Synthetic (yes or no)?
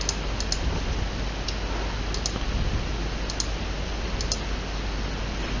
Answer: no